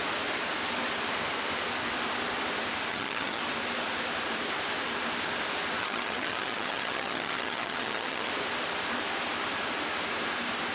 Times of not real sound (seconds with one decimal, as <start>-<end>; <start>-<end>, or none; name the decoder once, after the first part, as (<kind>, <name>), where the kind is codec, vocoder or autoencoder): 2.9-3.4 (vocoder, HiFi-GAN); 5.8-8.3